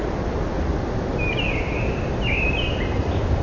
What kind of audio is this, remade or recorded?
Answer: recorded